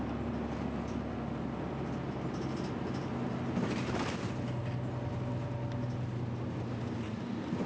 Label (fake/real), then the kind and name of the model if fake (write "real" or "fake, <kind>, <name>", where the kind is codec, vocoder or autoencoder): real